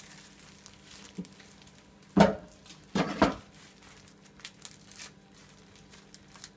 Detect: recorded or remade recorded